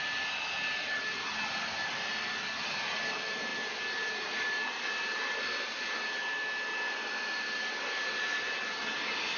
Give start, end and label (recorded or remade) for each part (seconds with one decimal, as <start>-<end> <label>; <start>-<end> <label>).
0.0-9.4 recorded